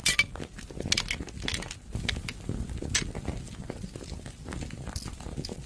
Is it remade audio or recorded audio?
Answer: recorded